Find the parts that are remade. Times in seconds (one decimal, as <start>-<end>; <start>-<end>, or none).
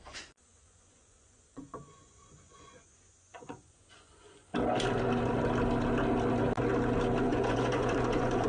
0.0-4.5; 7.2-8.5